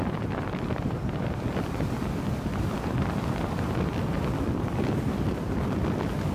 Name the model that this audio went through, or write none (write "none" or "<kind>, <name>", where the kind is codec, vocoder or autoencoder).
vocoder, BigVGAN v2